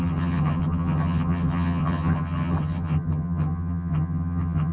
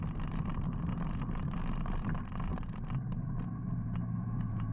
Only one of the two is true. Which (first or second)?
second